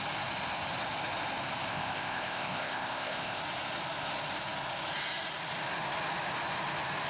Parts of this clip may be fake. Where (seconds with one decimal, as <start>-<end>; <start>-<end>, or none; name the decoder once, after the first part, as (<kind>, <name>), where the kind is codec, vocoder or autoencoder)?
1.7-3.4 (codec, ZipCodec)